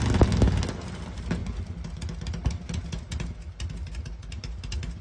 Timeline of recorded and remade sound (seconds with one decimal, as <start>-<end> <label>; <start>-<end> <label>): 0.0-5.0 recorded